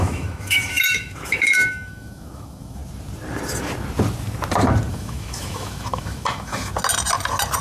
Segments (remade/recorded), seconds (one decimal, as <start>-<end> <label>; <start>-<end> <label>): 0.0-2.8 remade; 2.8-4.9 recorded; 4.9-6.7 remade; 6.7-7.6 recorded